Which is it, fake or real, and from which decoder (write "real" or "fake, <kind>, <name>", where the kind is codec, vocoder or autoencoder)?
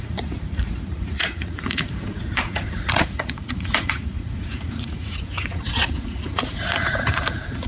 fake, vocoder, Vocos